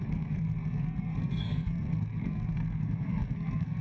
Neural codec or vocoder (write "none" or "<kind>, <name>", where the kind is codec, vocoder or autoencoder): codec, SNAC